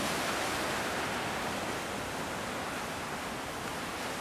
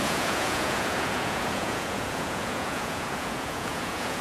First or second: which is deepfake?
second